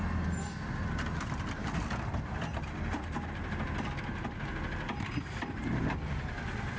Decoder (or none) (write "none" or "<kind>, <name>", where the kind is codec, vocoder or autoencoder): none